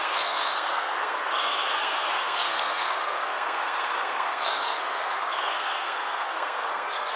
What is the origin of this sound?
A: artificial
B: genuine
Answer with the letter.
A